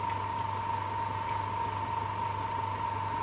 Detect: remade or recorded recorded